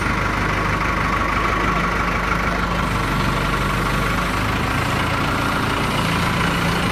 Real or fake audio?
real